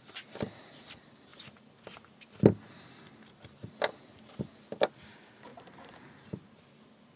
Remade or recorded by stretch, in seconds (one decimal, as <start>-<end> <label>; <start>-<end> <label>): 0.0-1.3 recorded; 1.3-1.8 remade; 1.8-5.5 recorded; 5.5-6.6 remade; 6.6-7.2 recorded